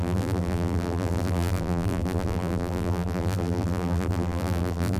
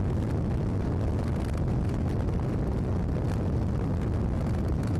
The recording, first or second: second